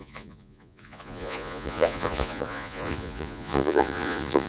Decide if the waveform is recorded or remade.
remade